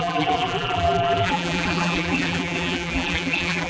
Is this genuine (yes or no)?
no